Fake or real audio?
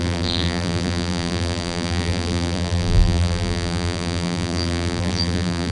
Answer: fake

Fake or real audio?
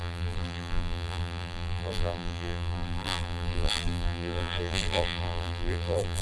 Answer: fake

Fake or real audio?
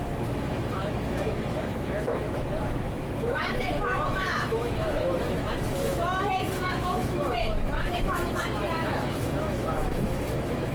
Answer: fake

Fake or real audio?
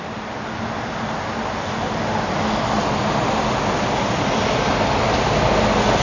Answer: real